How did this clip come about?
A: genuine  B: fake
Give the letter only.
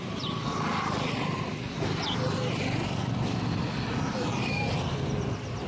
A